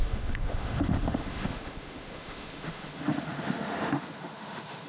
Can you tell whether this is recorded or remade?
remade